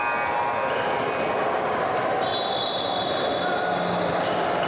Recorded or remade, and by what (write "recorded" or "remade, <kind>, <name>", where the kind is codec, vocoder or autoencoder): recorded